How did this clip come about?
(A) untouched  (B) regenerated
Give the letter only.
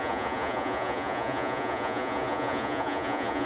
B